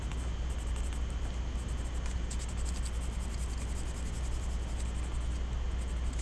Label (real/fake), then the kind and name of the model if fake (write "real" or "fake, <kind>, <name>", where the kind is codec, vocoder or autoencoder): real